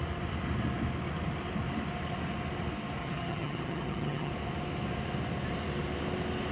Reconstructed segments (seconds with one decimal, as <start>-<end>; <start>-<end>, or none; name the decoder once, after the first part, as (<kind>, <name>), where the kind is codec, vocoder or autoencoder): 3.0-4.3 (vocoder, HiFi-GAN)